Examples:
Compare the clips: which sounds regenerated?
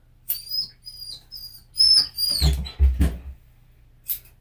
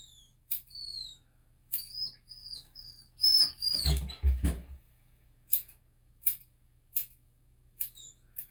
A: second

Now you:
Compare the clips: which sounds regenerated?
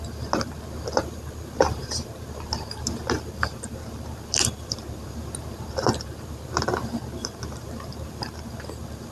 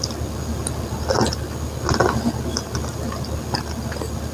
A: first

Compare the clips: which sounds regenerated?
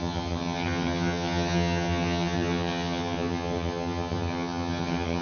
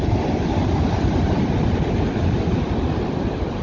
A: first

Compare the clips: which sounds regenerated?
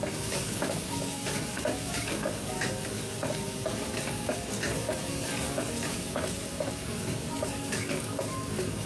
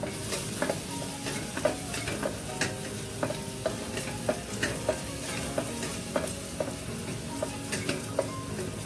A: first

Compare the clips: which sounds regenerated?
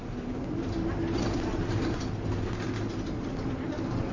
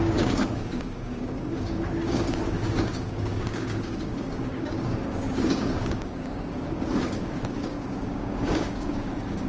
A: second